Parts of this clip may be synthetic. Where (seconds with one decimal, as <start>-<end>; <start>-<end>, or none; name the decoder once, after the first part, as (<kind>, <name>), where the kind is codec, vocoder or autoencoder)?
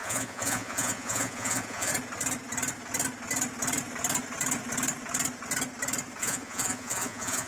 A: 0.0-1.9 (vocoder, Vocos); 6.2-7.5